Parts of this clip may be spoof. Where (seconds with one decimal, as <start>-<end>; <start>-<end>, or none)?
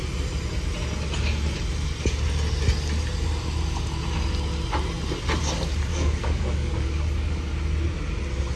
5.9-7.5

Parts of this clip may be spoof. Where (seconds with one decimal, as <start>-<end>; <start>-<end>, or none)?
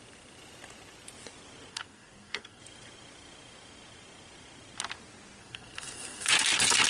1.7-2.6; 5.4-6.3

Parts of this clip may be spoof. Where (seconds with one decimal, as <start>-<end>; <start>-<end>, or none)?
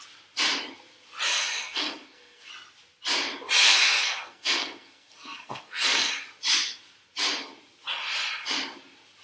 1.3-2.5; 3.6-6.1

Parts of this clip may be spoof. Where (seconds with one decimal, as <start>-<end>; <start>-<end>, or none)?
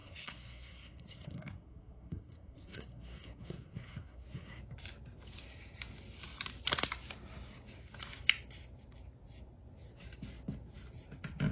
0.0-4.6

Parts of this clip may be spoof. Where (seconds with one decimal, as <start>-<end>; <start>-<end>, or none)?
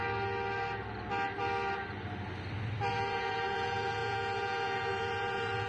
2.9-5.7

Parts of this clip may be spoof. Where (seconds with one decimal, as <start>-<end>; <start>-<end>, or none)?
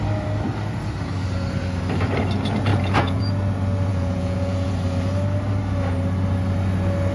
2.7-3.3; 3.9-4.7